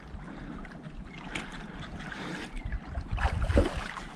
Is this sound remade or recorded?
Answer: recorded